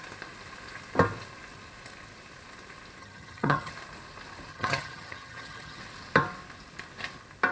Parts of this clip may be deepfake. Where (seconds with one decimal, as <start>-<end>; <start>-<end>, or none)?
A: 3.0-3.7; 4.5-5.8

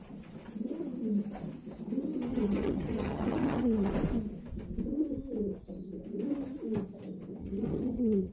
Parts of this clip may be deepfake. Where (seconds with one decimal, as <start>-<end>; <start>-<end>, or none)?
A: 2.3-3.9; 7.4-8.3

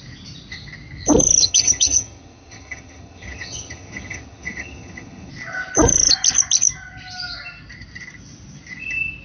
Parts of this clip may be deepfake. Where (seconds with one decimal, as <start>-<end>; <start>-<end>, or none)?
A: 1.4-5.3